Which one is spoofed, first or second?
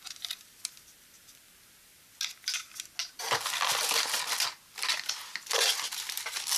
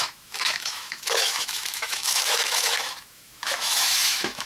second